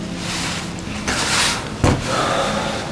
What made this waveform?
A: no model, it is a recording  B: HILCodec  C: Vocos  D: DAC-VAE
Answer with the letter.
A